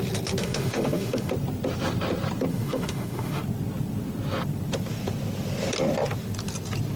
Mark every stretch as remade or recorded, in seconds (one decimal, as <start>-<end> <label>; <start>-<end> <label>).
0.0-0.4 recorded; 0.4-1.3 remade; 1.3-2.5 recorded; 2.5-3.4 remade; 3.4-7.0 recorded